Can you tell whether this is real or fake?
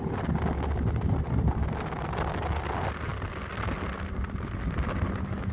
real